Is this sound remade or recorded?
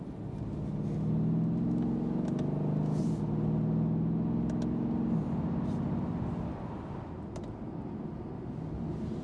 recorded